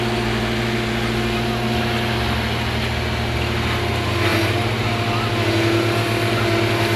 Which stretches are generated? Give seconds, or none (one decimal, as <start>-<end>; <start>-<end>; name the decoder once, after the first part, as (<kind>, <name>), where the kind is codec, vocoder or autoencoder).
none